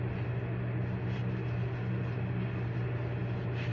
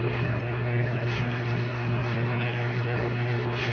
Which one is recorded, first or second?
first